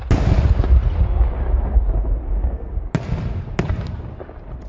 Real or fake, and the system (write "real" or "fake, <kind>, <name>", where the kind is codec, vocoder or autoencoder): real